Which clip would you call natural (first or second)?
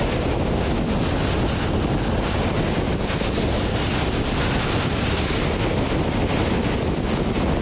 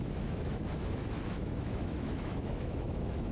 first